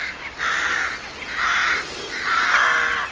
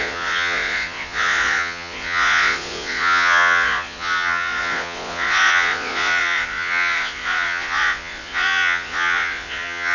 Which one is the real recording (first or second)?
first